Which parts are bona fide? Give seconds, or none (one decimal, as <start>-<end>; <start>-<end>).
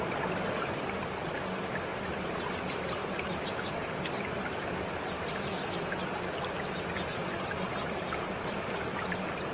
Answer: 0.0-1.9; 2.5-3.0; 5.5-9.5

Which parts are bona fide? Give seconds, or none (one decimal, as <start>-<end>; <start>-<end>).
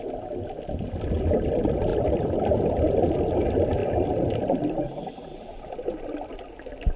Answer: 0.0-1.9; 2.7-5.3; 6.5-7.0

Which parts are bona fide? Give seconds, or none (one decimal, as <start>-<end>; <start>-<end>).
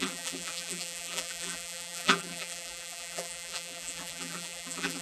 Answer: none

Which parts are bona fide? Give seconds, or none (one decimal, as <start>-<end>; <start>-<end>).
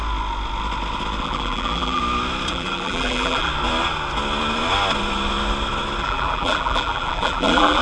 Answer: 0.0-1.2; 2.0-2.5; 3.5-6.0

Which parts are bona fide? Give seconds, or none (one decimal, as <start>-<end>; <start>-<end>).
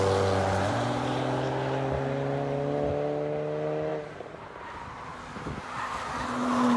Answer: 0.0-6.8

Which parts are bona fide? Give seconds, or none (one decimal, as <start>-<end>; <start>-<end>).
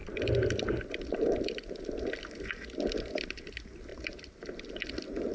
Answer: 0.0-3.9; 4.7-5.3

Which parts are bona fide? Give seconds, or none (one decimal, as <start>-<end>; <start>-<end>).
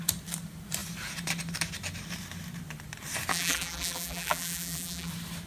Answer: 0.0-3.3; 5.1-5.5